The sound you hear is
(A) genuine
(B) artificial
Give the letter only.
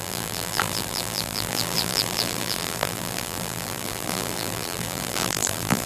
B